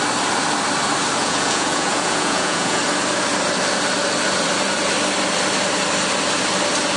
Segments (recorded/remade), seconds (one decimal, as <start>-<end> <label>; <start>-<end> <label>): 0.0-1.2 recorded; 1.2-2.8 remade; 2.8-7.0 recorded